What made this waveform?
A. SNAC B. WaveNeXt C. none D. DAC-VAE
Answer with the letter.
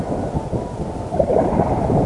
C